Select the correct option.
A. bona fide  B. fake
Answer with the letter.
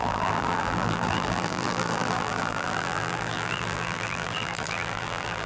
B